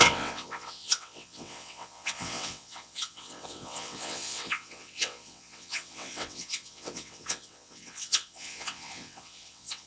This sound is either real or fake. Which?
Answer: fake